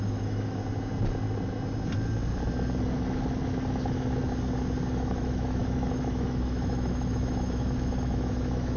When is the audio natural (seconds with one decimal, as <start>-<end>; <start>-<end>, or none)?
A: 0.6-4.9